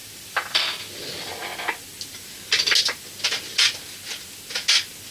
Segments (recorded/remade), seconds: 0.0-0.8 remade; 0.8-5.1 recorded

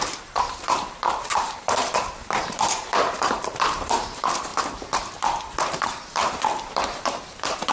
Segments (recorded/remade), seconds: 0.0-4.5 remade; 4.5-5.6 recorded; 5.6-7.7 remade

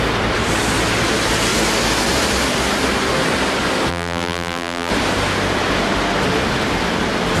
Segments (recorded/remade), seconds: 0.0-3.9 recorded; 3.9-4.9 remade; 4.9-7.4 recorded

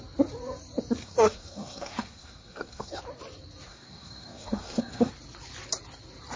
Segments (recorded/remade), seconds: 0.0-1.0 recorded; 1.0-3.0 remade; 3.0-3.7 recorded; 3.7-5.1 remade; 5.1-6.4 recorded

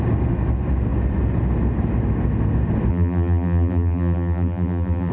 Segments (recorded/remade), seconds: 0.0-2.9 recorded; 2.9-5.1 remade

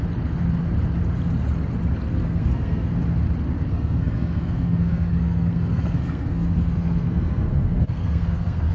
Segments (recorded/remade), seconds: 0.0-2.2 recorded; 2.2-2.9 remade; 2.9-3.7 recorded; 3.7-8.7 remade